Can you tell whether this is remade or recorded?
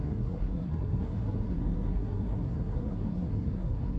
remade